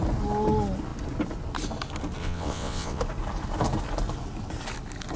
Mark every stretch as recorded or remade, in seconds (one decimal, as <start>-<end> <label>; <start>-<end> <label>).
0.0-2.2 recorded; 2.2-3.0 remade; 3.0-5.2 recorded